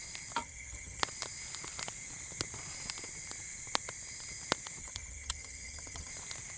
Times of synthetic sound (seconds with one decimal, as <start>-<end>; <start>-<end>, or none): 0.4-1.0; 4.8-6.1